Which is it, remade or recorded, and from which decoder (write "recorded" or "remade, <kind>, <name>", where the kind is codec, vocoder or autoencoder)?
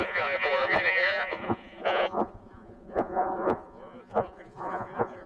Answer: remade, vocoder, Vocos